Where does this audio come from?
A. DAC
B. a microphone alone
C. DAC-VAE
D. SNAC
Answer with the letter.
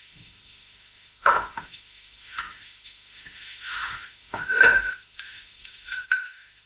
C